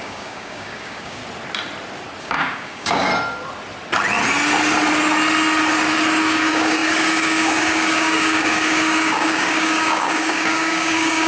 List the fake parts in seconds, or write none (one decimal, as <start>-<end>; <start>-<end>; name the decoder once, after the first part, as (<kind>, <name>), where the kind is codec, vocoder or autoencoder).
0.0-1.2 (codec, DAC); 2.2-3.1; 6.2-11.3